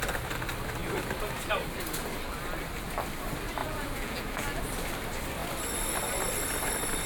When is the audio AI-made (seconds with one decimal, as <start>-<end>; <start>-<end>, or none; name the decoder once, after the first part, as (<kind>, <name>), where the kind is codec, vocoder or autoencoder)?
3.6-4.6 (vocoder, BigVGAN v2)